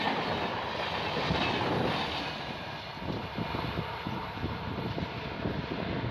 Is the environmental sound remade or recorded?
recorded